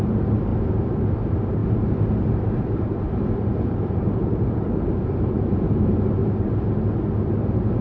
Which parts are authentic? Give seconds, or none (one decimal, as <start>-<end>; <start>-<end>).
0.5-1.1; 6.2-7.8